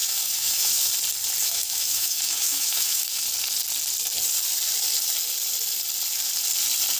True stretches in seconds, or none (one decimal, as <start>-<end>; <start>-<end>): 0.9-1.4; 3.2-7.0